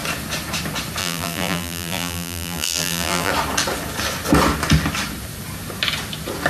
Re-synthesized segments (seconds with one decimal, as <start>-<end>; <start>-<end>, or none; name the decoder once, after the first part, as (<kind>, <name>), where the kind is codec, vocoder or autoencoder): 1.0-3.3 (vocoder, BigVGAN v2)